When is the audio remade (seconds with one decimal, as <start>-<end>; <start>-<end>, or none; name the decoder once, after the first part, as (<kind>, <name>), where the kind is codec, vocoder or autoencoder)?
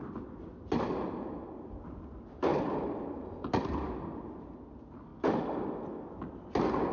2.5-3.5 (vocoder, BigVGAN v2)